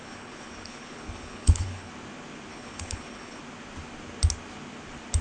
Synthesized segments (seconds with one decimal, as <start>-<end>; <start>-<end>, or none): 0.0-1.9; 2.5-3.4